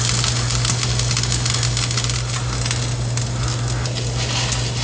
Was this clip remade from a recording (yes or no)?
no